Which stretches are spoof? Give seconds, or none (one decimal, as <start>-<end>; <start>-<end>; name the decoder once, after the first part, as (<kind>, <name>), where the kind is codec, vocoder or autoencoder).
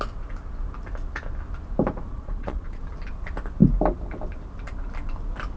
2.1-2.8 (vocoder, Vocos)